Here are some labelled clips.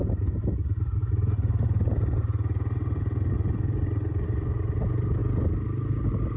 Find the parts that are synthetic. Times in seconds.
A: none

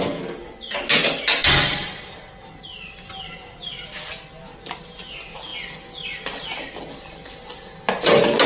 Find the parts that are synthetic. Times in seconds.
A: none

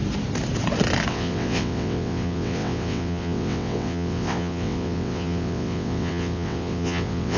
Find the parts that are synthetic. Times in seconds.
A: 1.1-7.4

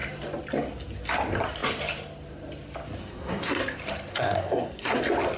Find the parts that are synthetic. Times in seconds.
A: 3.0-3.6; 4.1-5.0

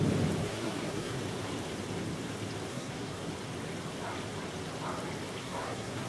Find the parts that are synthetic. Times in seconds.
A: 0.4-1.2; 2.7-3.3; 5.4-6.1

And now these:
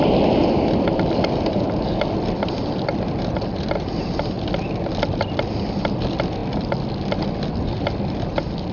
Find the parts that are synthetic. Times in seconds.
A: none